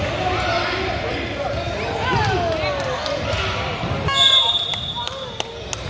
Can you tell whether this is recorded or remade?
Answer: recorded